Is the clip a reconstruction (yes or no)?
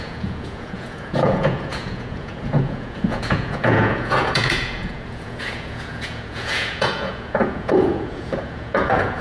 yes